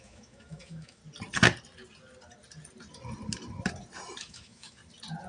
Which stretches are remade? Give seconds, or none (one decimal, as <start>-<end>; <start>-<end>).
0.0-1.0; 4.2-4.8

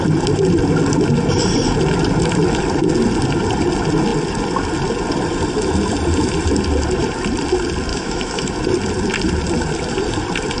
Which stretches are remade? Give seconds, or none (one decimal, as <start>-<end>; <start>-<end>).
7.9-8.5

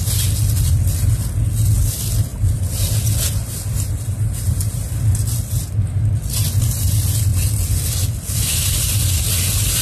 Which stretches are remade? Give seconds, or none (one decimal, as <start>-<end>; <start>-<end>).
none

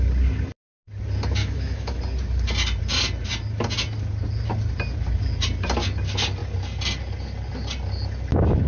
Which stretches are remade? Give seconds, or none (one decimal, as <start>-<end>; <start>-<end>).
1.4-2.0

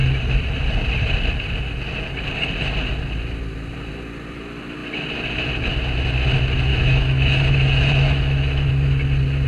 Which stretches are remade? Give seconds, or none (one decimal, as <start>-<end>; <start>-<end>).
6.7-8.7

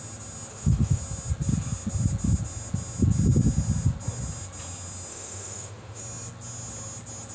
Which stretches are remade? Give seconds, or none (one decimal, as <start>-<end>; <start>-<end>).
0.5-1.0; 5.1-6.0